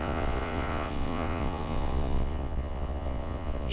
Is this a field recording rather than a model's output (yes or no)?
no